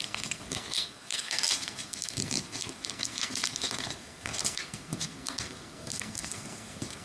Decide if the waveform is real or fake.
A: fake